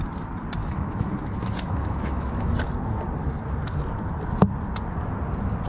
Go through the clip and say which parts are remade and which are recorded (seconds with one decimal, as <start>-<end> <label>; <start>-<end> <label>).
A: 0.0-0.6 recorded; 0.6-2.5 remade; 2.5-5.7 recorded